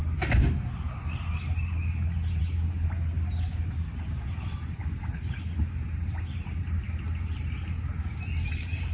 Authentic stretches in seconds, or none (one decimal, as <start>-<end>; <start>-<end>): 0.0-8.9

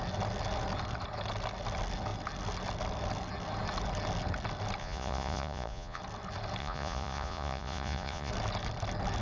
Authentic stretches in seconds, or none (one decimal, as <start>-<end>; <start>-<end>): 0.0-4.8; 6.0-6.6; 8.3-9.2

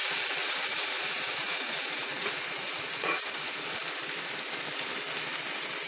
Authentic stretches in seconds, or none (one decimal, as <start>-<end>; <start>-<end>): 3.5-5.9

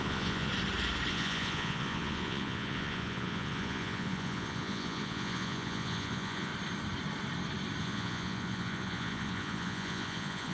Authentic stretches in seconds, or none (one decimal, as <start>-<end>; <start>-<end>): 0.5-1.1; 6.5-7.8

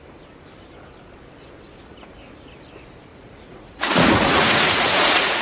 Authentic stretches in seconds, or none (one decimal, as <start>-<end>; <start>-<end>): 0.0-3.1

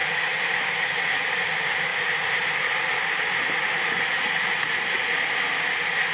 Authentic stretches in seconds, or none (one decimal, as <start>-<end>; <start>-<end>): 0.0-6.1